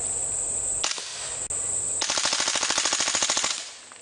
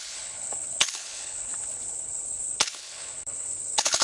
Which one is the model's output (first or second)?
second